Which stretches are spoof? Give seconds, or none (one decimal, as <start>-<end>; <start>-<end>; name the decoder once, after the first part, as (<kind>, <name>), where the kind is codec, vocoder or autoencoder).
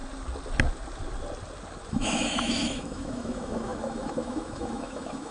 1.9-5.3 (autoencoder, DAC-VAE)